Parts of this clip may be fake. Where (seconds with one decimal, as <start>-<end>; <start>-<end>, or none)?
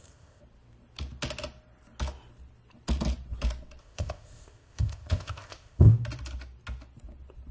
0.0-0.4; 3.8-5.9